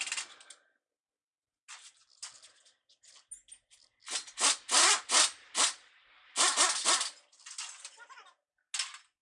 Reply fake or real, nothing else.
real